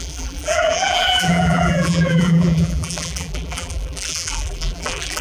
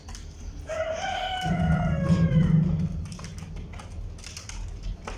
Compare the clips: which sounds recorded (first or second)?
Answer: second